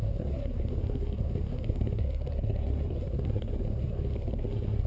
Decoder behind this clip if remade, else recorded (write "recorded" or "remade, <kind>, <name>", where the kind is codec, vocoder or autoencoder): remade, codec, SNAC